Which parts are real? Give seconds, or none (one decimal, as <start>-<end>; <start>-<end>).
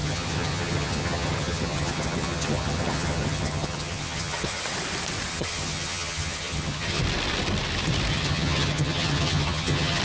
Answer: 4.6-5.3; 7.0-8.1